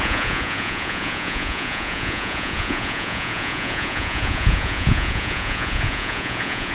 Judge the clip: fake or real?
fake